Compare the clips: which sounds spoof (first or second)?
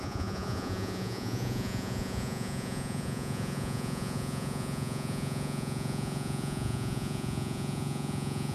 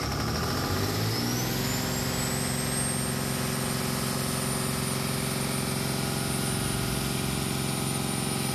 first